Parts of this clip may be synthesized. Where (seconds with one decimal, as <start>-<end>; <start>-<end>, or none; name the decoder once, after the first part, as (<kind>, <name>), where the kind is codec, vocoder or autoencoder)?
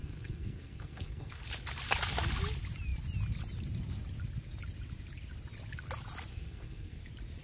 0.0-1.4 (codec, SNAC); 6.3-7.0